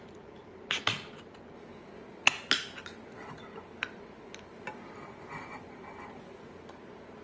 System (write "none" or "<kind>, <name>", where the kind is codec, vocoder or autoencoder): none